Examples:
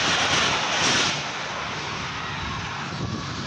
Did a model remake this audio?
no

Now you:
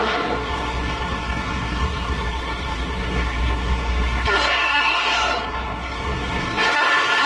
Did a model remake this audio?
yes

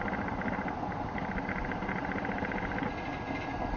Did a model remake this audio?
no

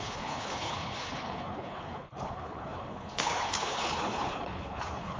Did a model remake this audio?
yes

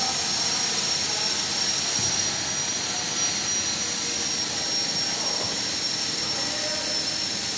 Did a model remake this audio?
no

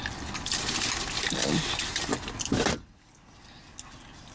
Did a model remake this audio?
no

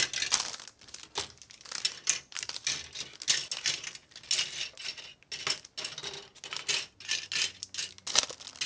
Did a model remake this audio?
no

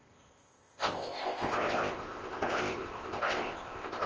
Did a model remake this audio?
yes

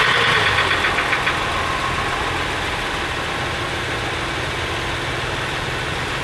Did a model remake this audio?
no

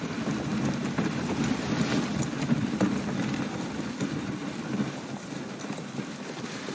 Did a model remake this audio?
no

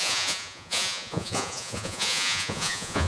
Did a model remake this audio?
yes